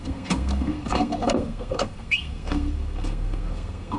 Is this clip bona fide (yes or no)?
no